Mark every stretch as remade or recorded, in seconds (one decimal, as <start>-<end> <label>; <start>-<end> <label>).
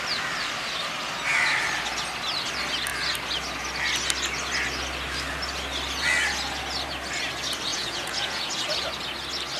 0.0-7.7 recorded; 7.7-8.5 remade; 8.5-9.6 recorded